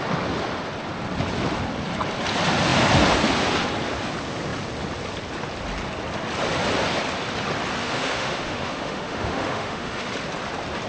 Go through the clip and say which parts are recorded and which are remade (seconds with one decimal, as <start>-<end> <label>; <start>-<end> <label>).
0.0-7.8 recorded; 7.8-10.1 remade; 10.1-10.9 recorded